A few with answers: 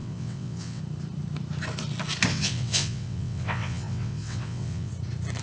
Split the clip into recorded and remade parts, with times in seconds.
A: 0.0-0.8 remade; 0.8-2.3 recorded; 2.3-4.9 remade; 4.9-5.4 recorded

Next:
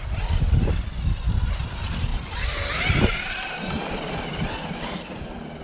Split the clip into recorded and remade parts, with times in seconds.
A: 0.0-5.6 recorded

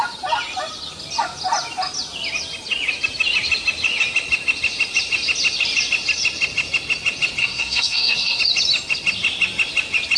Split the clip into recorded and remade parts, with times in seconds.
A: 0.0-7.4 recorded; 7.4-8.4 remade; 8.4-10.2 recorded

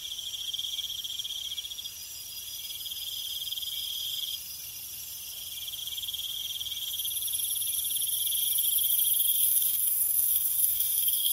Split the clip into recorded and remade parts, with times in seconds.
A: 0.0-9.3 recorded; 9.3-11.3 remade

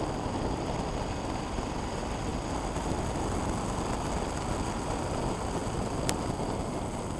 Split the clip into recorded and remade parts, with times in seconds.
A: 0.0-7.2 recorded

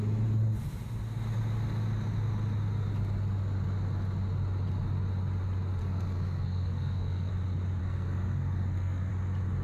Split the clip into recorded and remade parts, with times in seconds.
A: 0.0-5.8 recorded; 5.8-7.3 remade; 7.3-7.8 recorded; 7.8-9.1 remade; 9.1-9.6 recorded

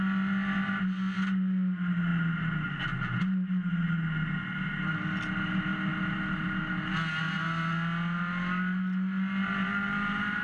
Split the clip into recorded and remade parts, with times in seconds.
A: 0.0-10.4 recorded

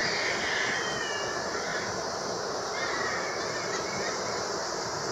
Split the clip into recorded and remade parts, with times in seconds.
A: 0.0-0.5 remade; 0.5-1.7 recorded; 1.7-3.1 remade; 3.1-5.1 recorded